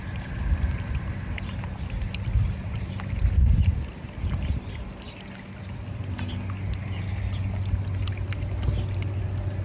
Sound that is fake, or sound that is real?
real